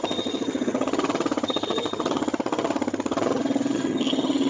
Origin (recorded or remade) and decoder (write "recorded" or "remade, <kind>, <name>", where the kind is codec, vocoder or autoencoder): remade, vocoder, HiFi-GAN